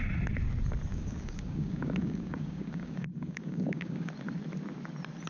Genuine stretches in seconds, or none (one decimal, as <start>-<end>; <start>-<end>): 0.0-0.9; 4.1-5.3